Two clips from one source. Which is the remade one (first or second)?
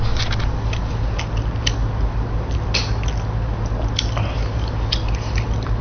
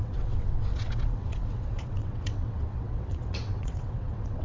second